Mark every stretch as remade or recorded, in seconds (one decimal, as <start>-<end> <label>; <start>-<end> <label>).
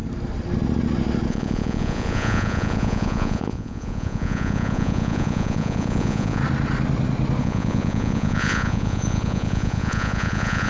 0.0-1.3 recorded; 1.3-6.4 remade; 6.4-7.4 recorded; 7.4-10.7 remade